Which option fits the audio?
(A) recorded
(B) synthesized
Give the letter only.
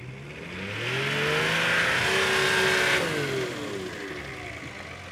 A